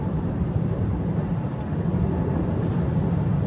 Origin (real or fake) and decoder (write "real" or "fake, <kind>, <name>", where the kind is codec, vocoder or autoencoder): real